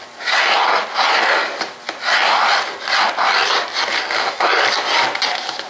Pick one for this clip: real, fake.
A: real